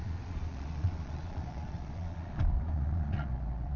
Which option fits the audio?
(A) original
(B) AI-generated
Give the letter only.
B